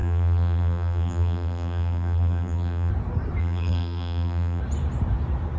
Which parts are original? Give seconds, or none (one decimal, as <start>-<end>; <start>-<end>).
2.9-3.4; 4.6-5.6